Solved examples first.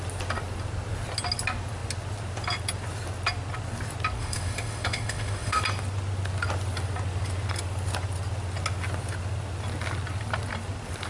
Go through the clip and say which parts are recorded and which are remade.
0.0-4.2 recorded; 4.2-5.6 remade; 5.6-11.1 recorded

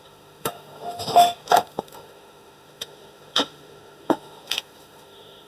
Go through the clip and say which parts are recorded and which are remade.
0.0-5.5 remade

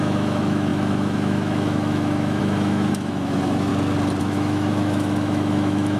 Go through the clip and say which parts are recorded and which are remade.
0.0-3.7 remade; 3.7-4.2 recorded; 4.2-6.0 remade

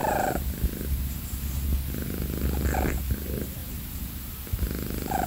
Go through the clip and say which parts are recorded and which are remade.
0.0-5.3 recorded

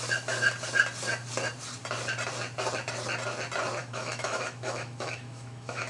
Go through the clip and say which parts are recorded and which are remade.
0.0-3.8 recorded; 3.8-5.9 remade

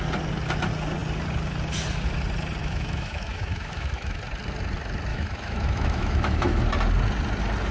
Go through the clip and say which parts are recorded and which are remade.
0.0-2.6 recorded; 2.6-4.2 remade; 4.2-5.1 recorded; 5.1-6.6 remade; 6.6-7.7 recorded

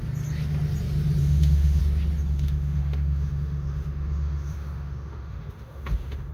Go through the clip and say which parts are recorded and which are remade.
0.0-1.2 recorded; 1.2-1.8 remade; 1.8-2.3 recorded; 2.3-6.3 remade

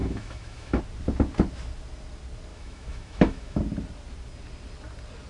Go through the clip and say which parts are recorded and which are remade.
0.0-0.8 remade; 0.8-2.5 recorded; 2.5-3.6 remade; 3.6-5.3 recorded